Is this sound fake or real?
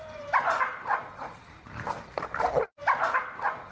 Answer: real